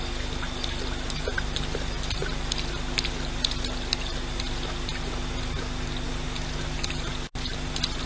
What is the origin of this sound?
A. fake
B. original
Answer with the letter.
B